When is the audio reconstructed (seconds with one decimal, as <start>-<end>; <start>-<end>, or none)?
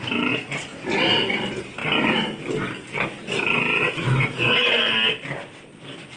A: none